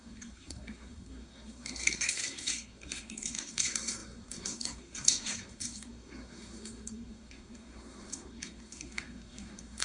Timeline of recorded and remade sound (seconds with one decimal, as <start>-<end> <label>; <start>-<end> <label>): 0.0-9.8 remade